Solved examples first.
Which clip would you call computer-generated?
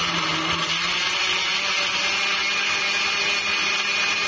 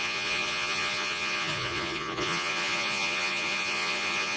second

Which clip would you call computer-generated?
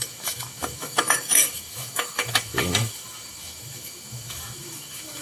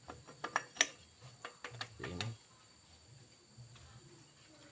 first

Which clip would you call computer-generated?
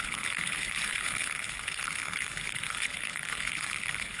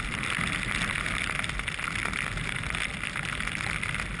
first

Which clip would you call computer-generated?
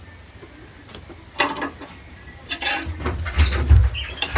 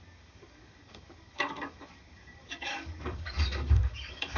second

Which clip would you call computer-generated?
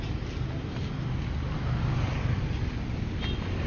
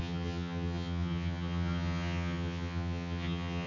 second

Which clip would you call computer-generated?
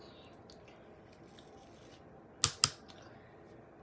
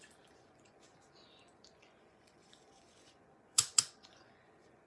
second